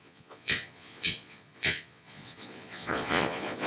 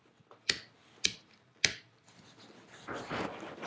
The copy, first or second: first